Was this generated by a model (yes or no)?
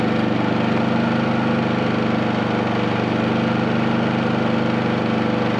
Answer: no